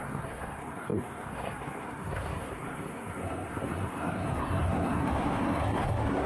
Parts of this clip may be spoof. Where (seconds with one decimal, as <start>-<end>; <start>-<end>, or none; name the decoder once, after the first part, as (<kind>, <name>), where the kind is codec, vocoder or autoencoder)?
0.0-6.3 (codec, SNAC)